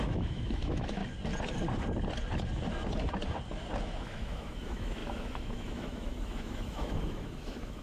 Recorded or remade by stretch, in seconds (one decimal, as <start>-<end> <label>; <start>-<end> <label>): 0.0-1.0 remade; 1.0-3.8 recorded; 3.8-7.8 remade